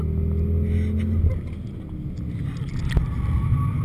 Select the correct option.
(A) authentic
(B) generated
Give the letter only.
A